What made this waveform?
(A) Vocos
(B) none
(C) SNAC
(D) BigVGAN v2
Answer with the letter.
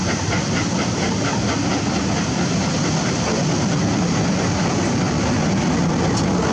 B